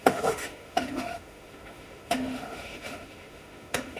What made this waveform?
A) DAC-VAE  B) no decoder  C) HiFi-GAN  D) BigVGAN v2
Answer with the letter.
A